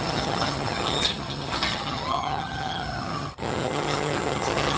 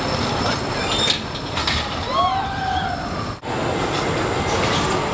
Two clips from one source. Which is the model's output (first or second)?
first